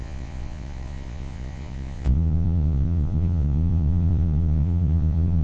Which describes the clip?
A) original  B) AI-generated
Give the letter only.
B